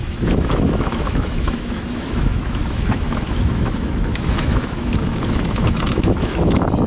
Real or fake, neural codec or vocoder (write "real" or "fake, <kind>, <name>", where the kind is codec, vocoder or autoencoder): fake, autoencoder, DAC-VAE